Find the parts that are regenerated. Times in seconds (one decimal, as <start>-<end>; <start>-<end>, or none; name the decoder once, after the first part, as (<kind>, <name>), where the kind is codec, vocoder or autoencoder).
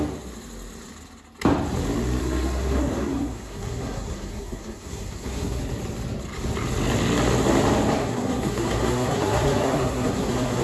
2.2-5.6 (codec, SNAC); 8.0-10.6